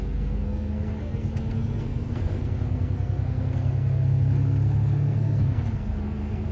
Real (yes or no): no